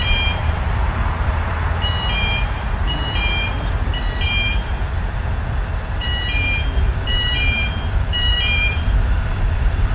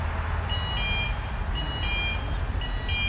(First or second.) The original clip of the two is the second